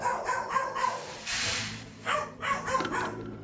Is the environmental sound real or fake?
fake